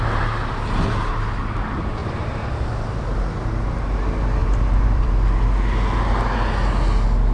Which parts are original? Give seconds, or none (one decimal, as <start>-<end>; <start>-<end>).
0.0-2.0; 2.7-4.4; 5.1-7.3